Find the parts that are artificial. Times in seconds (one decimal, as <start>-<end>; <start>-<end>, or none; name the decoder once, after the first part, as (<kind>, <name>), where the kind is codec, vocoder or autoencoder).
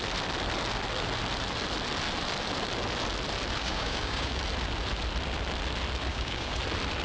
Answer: 3.6-4.4 (codec, DAC); 6.1-6.6